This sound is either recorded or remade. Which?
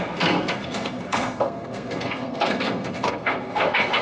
remade